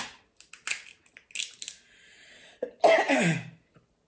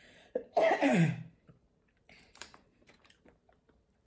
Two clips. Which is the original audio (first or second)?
first